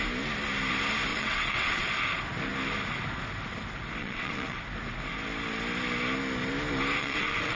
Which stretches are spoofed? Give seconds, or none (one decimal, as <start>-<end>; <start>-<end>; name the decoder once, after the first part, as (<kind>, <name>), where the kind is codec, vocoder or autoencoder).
1.1-1.9 (vocoder, WaveNeXt); 4.0-4.6; 7.0-7.6